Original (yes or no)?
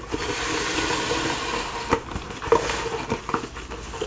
yes